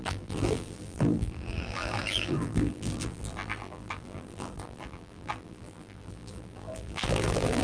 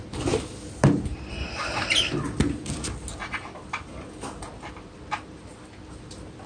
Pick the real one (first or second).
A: second